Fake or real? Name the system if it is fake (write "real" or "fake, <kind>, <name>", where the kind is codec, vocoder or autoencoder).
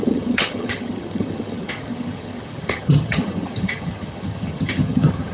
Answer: fake, vocoder, HiFi-GAN